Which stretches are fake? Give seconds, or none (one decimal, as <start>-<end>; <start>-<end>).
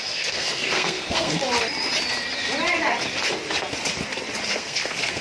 0.0-1.4; 4.5-5.2